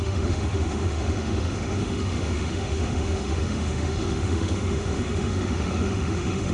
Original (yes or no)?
no